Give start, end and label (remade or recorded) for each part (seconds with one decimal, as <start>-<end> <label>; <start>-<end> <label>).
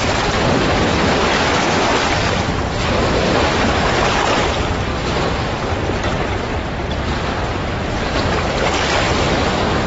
0.0-9.9 recorded